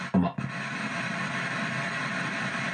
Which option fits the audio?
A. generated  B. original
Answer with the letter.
B